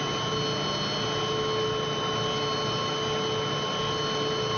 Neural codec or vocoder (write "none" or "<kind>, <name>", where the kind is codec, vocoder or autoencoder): none